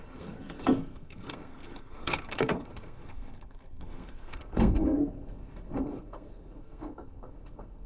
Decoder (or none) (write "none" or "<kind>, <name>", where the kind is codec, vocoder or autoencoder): codec, SNAC